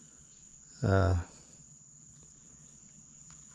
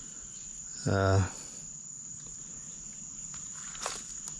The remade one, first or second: first